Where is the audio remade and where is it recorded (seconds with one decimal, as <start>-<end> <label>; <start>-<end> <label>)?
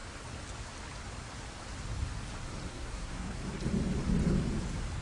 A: 0.0-2.7 recorded; 2.7-3.4 remade; 3.4-5.0 recorded